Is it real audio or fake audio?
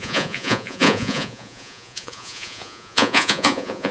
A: fake